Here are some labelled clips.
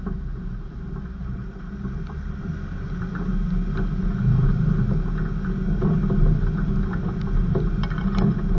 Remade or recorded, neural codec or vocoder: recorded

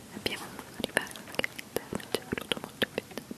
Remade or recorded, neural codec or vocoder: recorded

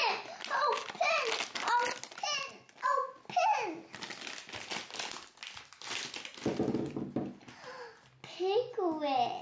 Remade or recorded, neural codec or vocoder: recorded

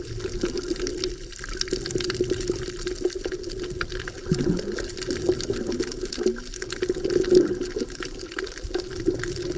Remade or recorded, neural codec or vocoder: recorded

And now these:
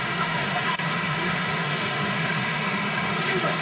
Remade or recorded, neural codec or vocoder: remade, autoencoder, DAC-VAE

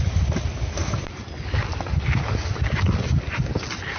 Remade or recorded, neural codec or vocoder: recorded